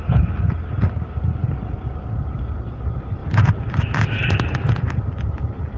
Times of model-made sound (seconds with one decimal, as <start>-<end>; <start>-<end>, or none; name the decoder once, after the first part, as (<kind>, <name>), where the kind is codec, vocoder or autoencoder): 1.4-2.4 (vocoder, BigVGAN v2); 3.2-4.9